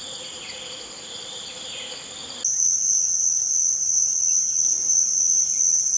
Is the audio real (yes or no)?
yes